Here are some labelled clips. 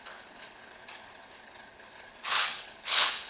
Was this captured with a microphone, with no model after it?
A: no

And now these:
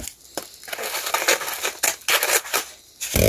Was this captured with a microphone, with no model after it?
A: yes